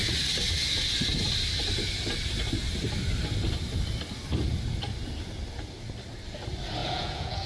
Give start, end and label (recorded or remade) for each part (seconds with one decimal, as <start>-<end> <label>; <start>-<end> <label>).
0.0-6.8 recorded; 6.8-7.5 remade